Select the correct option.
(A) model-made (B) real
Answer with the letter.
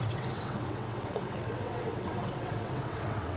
A